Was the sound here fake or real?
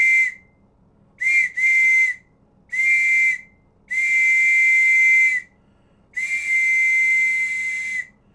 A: real